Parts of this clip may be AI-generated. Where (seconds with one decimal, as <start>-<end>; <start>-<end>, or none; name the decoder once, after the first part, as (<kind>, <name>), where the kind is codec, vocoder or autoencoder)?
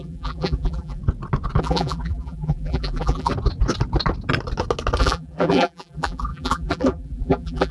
0.0-1.0 (vocoder, BigVGAN v2); 1.6-3.3; 5.0-7.7